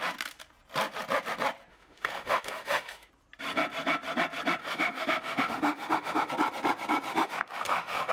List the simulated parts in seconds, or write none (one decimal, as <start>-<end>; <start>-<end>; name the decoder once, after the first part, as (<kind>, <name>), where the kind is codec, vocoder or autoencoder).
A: 1.7-3.1 (autoencoder, DAC-VAE); 4.6-6.3; 7.1-8.1